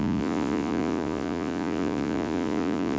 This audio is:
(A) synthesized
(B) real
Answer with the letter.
A